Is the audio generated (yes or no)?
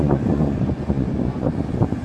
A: yes